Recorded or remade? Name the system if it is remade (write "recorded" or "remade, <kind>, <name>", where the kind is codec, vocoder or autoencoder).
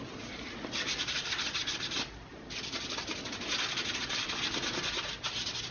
recorded